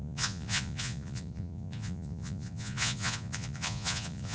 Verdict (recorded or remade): remade